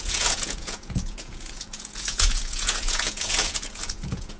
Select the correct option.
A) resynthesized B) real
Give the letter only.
A